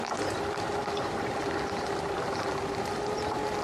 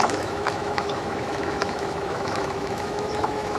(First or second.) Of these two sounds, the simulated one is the second